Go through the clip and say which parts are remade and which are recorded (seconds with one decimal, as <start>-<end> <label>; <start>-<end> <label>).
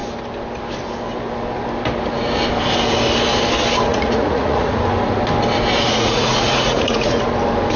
0.0-3.9 recorded; 3.9-4.8 remade; 4.8-5.9 recorded; 5.9-7.2 remade; 7.2-7.8 recorded